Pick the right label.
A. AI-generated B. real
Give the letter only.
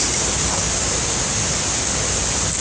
B